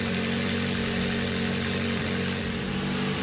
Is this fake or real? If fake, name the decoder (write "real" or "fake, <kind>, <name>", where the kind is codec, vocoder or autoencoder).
real